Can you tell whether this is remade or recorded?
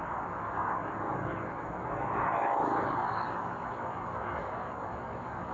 remade